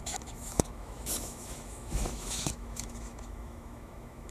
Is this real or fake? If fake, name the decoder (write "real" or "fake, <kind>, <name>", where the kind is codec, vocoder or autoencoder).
fake, autoencoder, DAC-VAE